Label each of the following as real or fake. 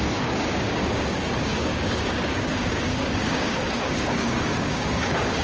fake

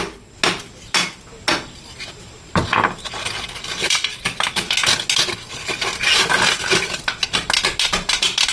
real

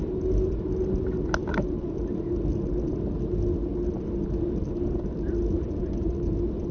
real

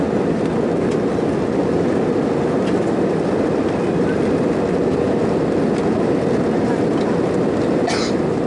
real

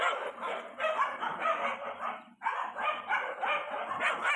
real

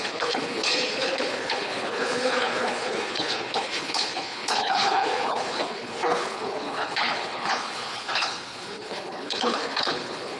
fake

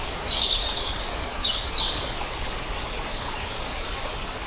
fake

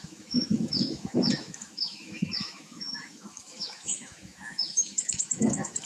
fake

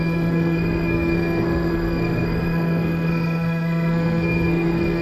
fake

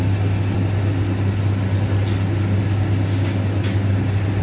real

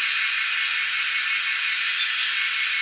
real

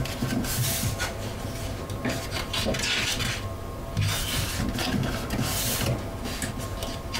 real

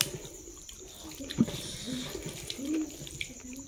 fake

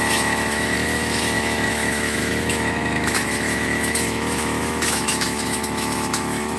fake